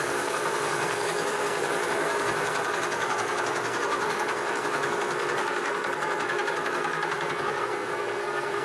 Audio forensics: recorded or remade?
remade